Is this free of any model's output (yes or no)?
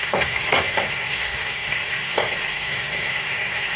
no